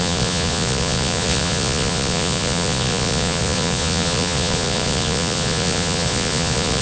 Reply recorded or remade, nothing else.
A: remade